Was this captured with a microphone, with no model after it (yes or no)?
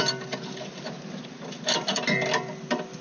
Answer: yes